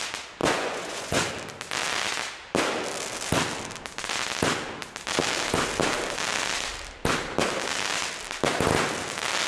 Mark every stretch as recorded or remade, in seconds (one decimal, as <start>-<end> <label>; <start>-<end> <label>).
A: 0.0-0.4 recorded; 0.4-1.3 remade; 1.3-9.5 recorded